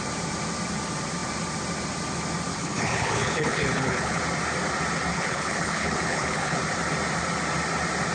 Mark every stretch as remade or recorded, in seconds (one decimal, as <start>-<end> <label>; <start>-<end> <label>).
0.0-2.5 recorded; 2.5-4.2 remade; 4.2-5.1 recorded; 5.1-6.6 remade; 6.6-8.1 recorded